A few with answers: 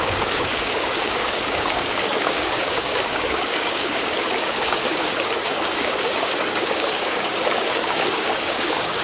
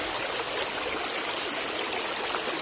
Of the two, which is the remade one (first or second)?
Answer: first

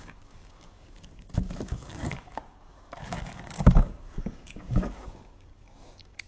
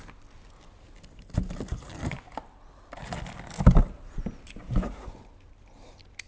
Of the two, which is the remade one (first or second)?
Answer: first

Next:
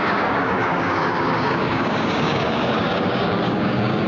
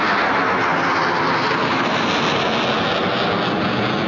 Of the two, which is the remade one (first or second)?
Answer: first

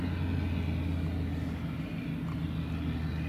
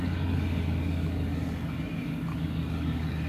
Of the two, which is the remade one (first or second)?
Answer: second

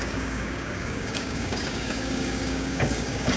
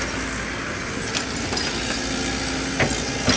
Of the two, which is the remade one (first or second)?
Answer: first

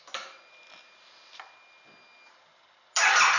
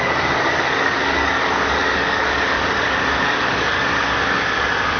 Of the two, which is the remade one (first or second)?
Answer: second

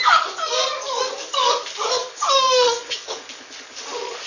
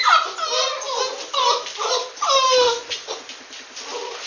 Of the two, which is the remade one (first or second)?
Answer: first